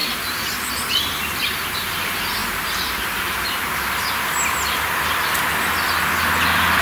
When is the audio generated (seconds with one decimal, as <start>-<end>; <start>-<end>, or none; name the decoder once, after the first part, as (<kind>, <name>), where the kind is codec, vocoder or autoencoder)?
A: 0.0-0.7 (vocoder, BigVGAN v2); 2.4-3.7